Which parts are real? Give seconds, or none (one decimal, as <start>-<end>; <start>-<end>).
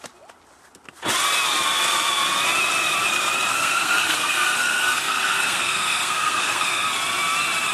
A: 0.0-3.5; 6.9-7.7